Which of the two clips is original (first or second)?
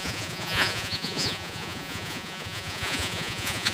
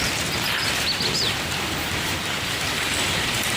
second